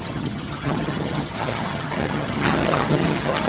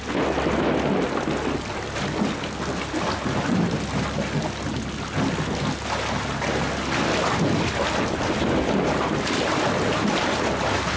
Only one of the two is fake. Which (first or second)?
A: first